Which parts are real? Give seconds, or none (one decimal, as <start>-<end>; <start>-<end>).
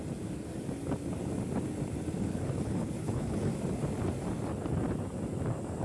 0.0-2.2; 3.5-5.8